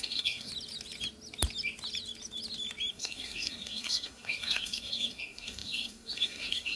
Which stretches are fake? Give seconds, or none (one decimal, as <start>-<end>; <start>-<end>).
0.0-0.5; 2.9-6.8

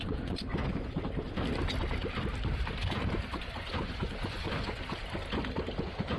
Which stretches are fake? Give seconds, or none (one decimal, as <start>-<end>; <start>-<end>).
0.0-0.5; 3.3-4.8; 5.8-6.2

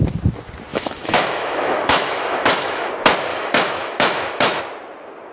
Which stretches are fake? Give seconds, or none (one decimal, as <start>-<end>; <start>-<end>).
0.7-2.9; 3.3-4.6